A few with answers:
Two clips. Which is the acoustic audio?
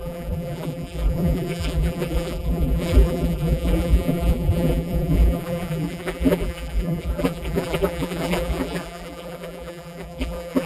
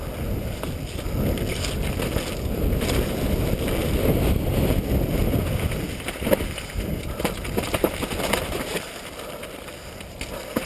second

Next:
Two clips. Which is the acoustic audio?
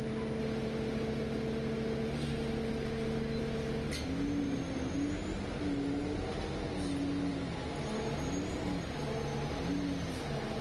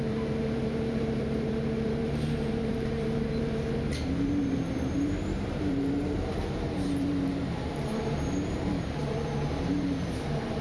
first